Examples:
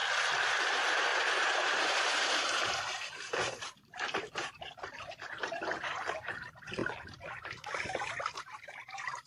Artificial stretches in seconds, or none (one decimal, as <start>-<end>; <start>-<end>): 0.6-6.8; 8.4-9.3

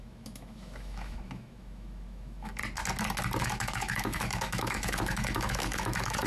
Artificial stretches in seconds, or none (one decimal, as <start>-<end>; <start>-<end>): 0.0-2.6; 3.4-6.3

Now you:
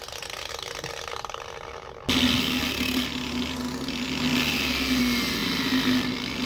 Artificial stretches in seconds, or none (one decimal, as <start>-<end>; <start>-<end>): none

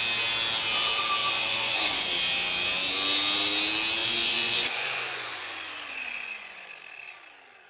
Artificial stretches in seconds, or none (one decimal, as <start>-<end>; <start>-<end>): 1.2-2.1; 4.0-6.8